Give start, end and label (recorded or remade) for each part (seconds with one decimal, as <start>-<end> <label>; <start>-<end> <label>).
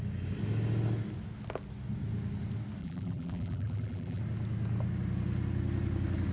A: 0.0-2.8 recorded; 2.8-4.2 remade; 4.2-6.3 recorded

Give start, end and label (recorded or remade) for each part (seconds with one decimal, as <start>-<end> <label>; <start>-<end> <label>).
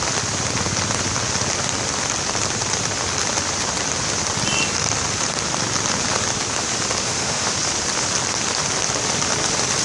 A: 0.0-7.0 recorded; 7.0-7.5 remade; 7.5-9.8 recorded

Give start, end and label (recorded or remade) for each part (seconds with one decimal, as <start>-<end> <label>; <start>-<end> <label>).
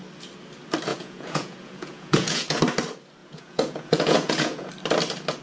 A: 0.0-0.9 recorded; 0.9-2.6 remade; 2.6-3.2 recorded; 3.2-4.7 remade; 4.7-5.4 recorded